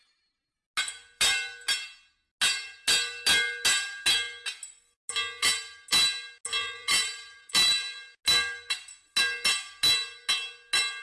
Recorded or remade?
recorded